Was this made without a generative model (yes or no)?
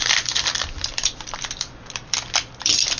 no